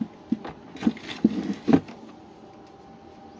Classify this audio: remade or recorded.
recorded